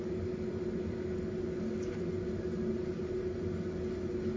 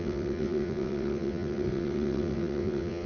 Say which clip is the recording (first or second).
first